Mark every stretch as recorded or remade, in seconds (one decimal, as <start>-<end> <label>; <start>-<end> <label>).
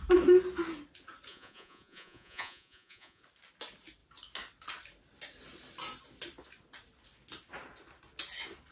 0.0-1.3 recorded; 1.3-3.2 remade; 3.2-8.7 recorded